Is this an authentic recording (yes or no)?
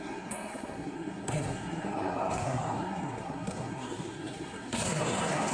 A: no